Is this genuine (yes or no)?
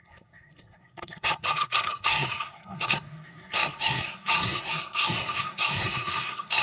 no